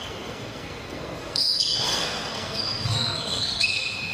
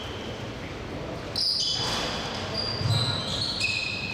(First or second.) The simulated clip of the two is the first